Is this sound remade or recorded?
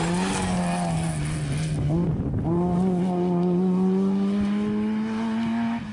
recorded